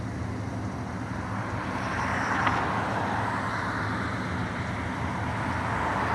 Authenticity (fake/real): real